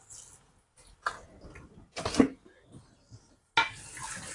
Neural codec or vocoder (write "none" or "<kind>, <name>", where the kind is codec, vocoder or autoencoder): none